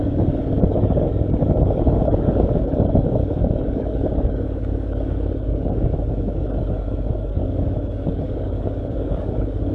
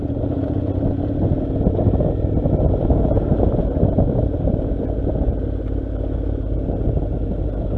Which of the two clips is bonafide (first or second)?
second